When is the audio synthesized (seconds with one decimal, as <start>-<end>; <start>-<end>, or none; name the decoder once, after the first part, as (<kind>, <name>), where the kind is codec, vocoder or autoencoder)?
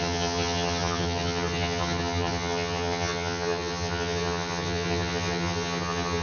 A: 0.0-6.2 (vocoder, HiFi-GAN)